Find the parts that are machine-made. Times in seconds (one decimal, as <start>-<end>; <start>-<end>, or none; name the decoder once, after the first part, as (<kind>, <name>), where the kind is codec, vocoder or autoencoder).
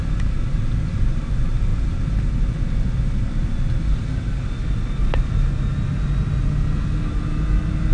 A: none